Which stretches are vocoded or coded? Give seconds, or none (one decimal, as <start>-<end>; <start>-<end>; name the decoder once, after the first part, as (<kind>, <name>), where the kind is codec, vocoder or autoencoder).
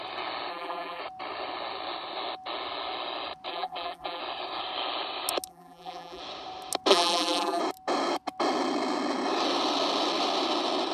0.5-1.0 (vocoder, BigVGAN v2); 3.5-4.2; 5.5-6.2; 6.9-7.6